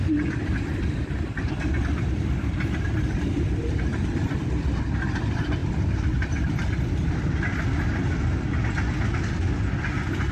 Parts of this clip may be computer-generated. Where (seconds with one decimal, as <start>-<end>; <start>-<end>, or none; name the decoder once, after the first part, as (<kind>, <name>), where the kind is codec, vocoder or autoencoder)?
none